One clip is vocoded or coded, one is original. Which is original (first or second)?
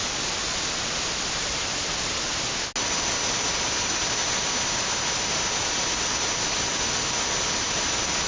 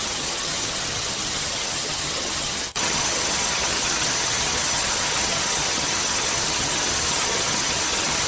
first